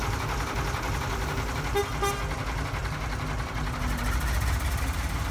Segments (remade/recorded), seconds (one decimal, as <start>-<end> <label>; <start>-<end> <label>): 0.0-5.3 recorded